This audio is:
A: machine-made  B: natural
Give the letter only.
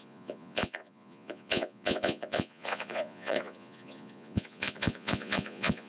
A